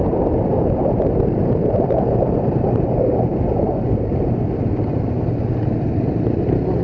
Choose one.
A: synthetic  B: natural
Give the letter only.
A